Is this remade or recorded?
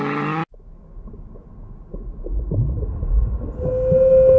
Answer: recorded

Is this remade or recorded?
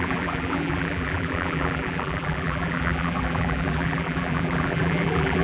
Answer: remade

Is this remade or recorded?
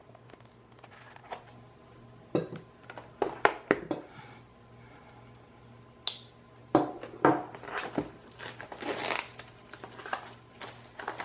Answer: recorded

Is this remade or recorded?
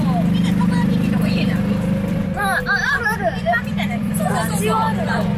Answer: remade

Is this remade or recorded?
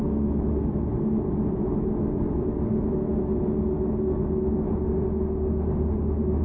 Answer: recorded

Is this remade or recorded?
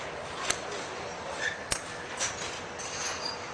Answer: recorded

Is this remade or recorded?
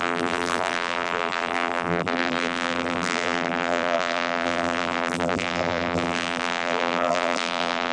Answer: remade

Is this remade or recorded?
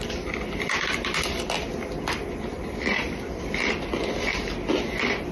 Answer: recorded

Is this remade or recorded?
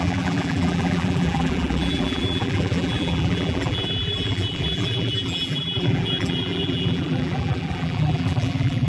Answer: remade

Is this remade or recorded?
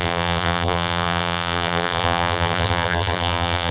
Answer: remade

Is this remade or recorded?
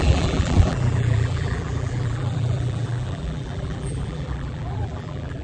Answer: remade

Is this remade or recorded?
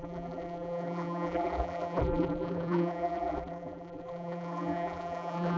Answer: remade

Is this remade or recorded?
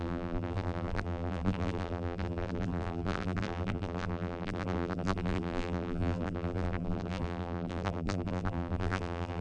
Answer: remade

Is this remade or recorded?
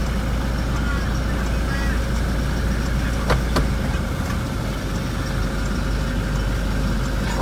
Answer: recorded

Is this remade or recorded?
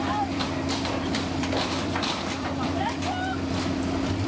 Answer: remade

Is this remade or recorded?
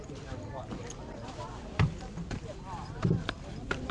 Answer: remade